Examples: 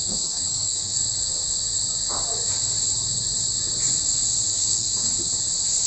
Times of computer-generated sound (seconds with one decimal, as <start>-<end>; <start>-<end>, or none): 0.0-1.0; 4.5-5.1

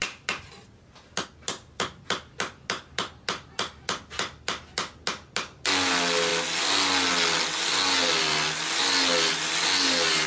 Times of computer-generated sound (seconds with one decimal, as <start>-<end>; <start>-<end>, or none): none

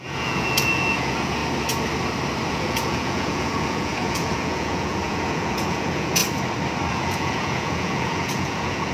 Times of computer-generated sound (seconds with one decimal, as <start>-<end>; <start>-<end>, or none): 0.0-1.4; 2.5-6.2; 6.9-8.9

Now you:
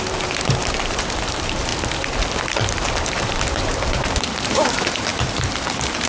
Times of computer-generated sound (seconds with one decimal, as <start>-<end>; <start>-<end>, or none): 0.0-1.7; 3.0-6.1

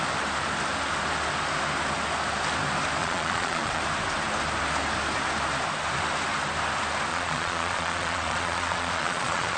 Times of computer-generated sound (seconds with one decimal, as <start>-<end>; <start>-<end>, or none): 3.0-3.8; 7.1-9.6

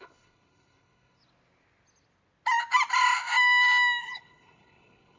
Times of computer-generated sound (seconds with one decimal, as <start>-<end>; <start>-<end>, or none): 0.0-1.2; 4.0-5.2

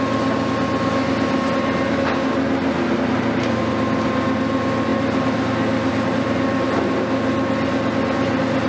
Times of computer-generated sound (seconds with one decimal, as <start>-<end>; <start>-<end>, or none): none